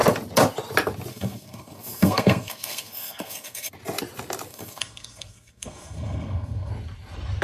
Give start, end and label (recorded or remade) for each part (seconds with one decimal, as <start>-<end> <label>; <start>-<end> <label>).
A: 0.0-1.1 recorded; 1.1-3.7 remade; 3.7-4.5 recorded; 4.5-6.7 remade; 6.7-7.4 recorded